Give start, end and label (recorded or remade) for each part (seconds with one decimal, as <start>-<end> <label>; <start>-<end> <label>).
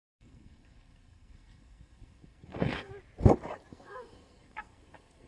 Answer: 0.0-2.9 remade; 2.9-3.7 recorded; 3.7-5.3 remade